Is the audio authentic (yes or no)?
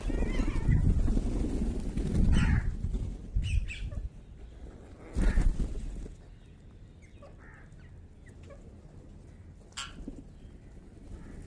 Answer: yes